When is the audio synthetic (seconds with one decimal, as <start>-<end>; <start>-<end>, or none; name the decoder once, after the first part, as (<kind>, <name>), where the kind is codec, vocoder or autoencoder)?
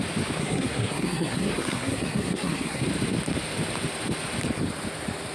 0.4-2.8 (codec, SNAC)